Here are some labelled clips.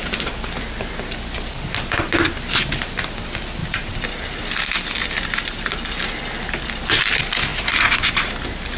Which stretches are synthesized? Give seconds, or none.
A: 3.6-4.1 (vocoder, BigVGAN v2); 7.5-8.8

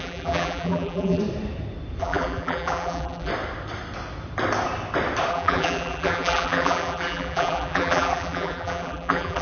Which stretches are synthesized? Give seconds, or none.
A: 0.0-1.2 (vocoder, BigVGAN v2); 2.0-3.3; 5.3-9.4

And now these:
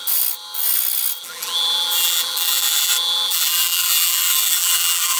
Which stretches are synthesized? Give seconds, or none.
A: 1.2-5.2 (vocoder, BigVGAN v2)

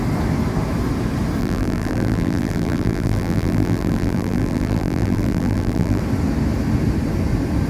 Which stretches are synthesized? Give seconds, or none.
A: 1.4-6.0 (vocoder, BigVGAN v2)